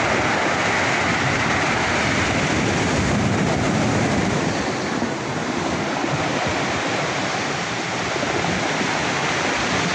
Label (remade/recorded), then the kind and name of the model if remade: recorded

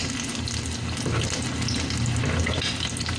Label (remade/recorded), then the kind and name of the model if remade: recorded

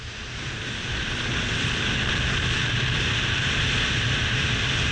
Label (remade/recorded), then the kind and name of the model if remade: recorded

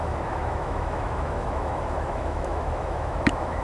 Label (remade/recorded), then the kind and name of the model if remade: remade, autoencoder, DAC-VAE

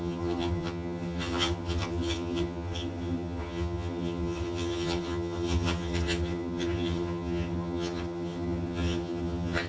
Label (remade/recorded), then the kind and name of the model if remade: remade, vocoder, HiFi-GAN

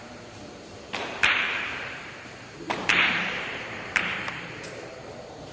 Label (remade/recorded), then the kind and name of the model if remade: remade, vocoder, BigVGAN v2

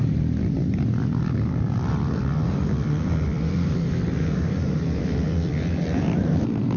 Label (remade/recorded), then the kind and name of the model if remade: remade, vocoder, BigVGAN v2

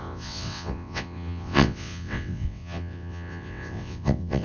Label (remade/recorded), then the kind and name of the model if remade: remade, vocoder, WaveNeXt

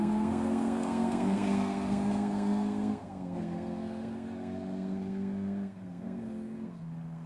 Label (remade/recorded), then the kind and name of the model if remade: remade, codec, SNAC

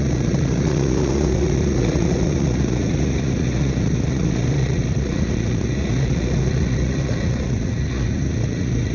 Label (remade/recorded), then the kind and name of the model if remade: remade, vocoder, Vocos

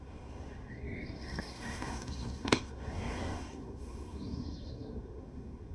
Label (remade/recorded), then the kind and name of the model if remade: remade, codec, SNAC